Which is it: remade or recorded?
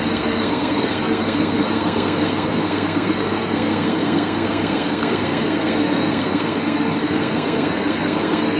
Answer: remade